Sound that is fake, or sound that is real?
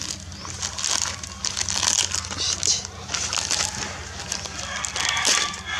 real